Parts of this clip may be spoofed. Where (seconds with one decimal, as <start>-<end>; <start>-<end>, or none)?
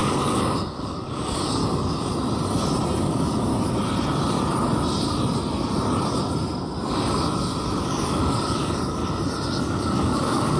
0.0-1.6; 3.0-3.5; 7.8-9.0; 9.6-10.6